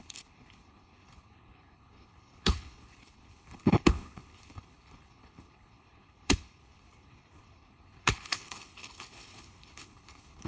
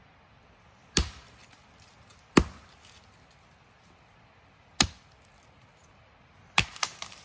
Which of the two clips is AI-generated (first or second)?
first